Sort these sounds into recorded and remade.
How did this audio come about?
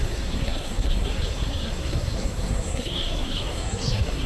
remade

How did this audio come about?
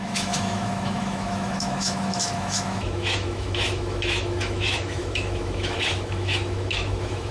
remade